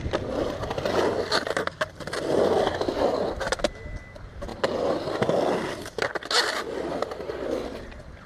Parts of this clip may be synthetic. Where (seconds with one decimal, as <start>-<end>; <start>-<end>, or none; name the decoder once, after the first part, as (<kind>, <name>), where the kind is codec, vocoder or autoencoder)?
none